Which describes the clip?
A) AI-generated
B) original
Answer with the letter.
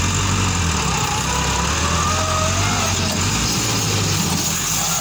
B